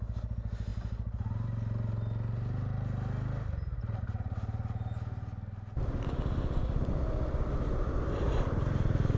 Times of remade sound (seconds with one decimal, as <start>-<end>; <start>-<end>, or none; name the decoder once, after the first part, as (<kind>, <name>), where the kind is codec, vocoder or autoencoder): none